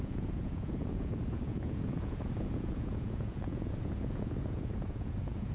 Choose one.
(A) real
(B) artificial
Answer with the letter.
B